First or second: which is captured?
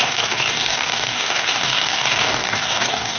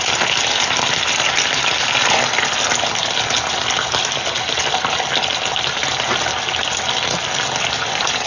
second